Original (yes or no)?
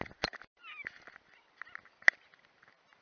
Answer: yes